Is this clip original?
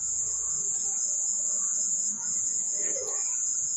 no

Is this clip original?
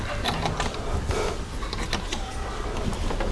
yes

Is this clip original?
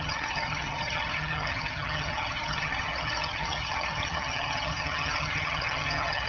no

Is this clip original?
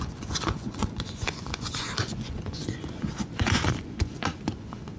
no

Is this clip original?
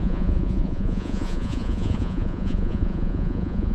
no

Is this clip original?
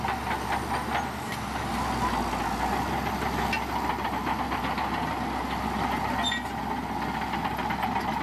yes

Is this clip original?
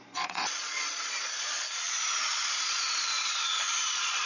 no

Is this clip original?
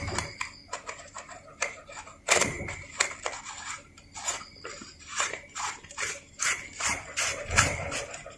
no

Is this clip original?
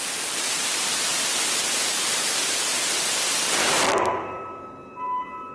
yes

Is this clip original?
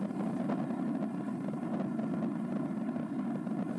yes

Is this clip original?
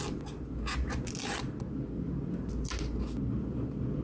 yes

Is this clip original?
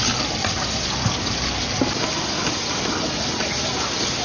yes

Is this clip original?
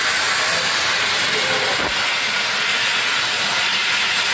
yes